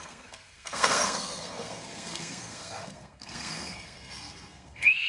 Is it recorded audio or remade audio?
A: remade